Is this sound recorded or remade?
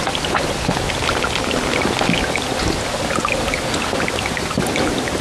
recorded